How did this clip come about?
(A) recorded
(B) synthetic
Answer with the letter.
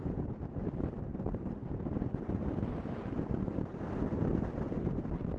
B